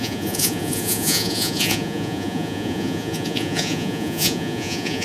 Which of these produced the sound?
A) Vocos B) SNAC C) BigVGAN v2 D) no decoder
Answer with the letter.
A